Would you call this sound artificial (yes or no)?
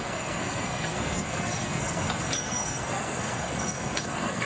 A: yes